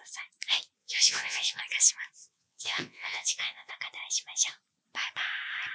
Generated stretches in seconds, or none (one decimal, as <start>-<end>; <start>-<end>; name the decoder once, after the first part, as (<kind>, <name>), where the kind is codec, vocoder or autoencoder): 0.8-1.6 (vocoder, WaveNeXt); 2.2-3.7